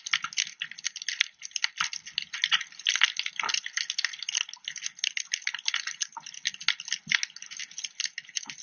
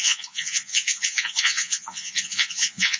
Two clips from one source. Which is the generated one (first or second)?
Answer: second